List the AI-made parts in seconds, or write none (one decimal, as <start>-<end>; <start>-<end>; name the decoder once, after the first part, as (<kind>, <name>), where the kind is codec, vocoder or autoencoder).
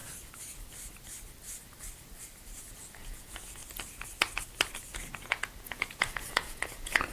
2.7-3.6 (vocoder, Vocos); 5.2-7.1